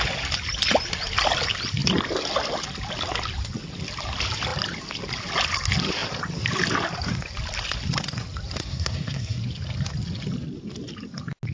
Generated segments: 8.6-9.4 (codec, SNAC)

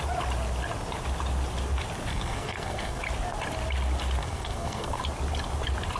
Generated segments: 2.1-3.0 (codec, SNAC); 4.2-5.0

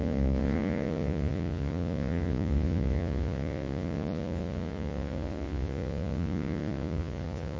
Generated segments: 0.0-7.6 (vocoder, Vocos)